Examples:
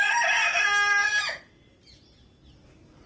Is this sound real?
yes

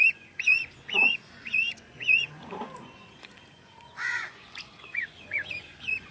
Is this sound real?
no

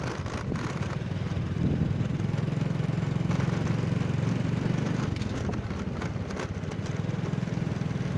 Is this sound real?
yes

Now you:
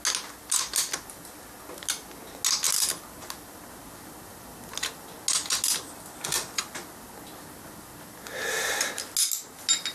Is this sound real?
yes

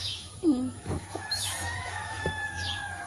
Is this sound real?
no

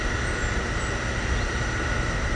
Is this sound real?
yes